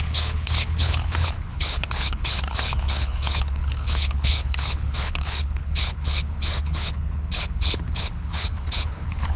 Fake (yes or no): yes